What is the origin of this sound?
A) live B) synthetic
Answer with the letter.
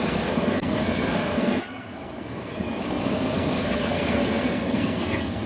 B